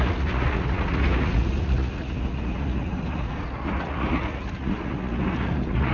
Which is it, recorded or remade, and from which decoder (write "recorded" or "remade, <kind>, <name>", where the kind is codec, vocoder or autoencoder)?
remade, vocoder, Vocos